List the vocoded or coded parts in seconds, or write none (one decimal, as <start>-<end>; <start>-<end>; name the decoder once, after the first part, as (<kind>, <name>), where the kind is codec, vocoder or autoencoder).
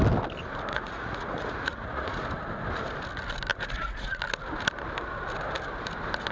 0.7-2.2 (vocoder, Vocos); 3.5-4.2